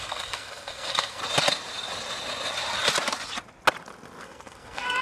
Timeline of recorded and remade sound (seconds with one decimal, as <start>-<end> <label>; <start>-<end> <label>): 0.0-1.2 remade; 1.2-4.2 recorded; 4.2-5.0 remade